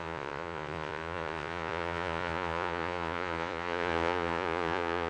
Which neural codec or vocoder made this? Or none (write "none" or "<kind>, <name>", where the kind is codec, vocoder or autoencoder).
vocoder, Vocos